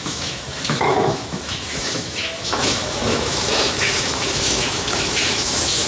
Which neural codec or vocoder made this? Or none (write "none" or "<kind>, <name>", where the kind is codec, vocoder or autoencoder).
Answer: autoencoder, DAC-VAE